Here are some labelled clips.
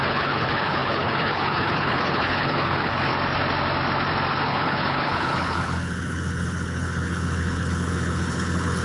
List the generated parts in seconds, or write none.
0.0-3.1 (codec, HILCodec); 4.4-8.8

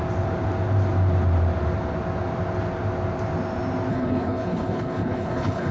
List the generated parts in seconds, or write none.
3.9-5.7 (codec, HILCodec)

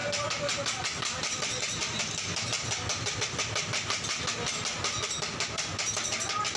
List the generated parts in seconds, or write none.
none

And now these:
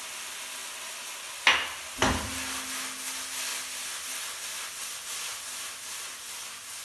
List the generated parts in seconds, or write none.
none

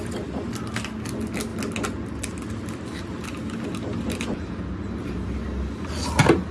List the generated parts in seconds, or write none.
none

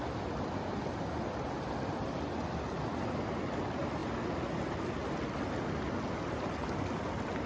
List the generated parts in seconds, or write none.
none

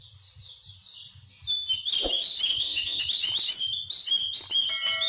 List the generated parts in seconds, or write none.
2.5-3.0 (codec, HILCodec)